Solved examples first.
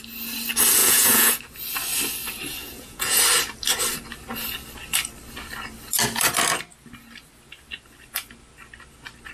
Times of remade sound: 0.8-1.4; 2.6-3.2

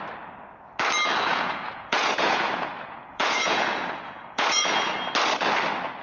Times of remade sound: 1.3-4.9

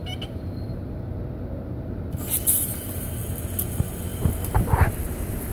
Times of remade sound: 4.1-5.5

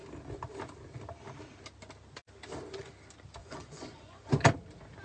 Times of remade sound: 3.4-4.3

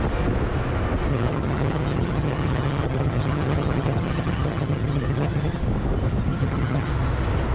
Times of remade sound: 1.1-5.6; 6.3-6.9

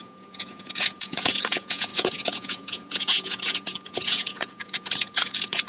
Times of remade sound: 0.0-5.7